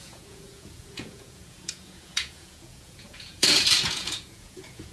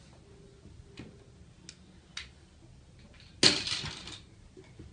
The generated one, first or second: first